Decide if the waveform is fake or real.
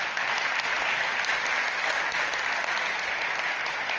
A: real